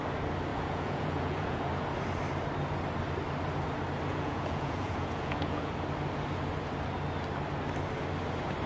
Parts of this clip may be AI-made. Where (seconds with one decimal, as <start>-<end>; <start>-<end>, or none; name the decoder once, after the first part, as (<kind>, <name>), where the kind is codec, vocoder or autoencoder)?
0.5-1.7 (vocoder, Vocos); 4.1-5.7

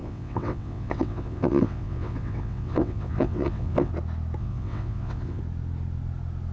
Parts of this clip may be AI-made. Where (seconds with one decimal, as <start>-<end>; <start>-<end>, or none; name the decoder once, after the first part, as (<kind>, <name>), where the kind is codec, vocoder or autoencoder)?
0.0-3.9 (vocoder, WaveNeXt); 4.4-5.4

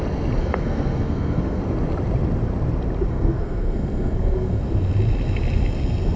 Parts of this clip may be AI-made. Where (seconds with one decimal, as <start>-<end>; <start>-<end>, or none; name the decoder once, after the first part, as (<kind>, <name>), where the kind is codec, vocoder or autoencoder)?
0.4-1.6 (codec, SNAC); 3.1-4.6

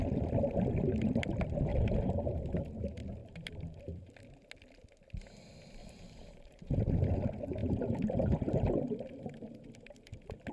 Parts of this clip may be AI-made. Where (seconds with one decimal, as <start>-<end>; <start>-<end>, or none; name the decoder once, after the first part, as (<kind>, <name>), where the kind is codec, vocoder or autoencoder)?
1.7-2.7 (vocoder, BigVGAN v2); 3.2-4.1; 5.8-6.8; 7.6-10.5